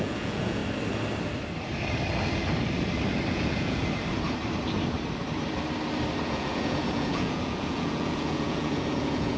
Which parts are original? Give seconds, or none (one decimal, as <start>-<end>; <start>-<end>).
0.6-3.3; 3.8-6.2